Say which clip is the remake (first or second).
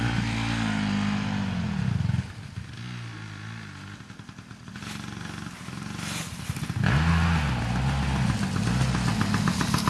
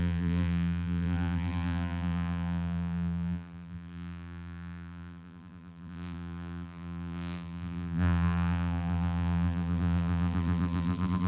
second